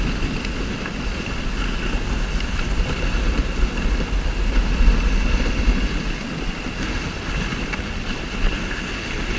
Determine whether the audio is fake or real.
real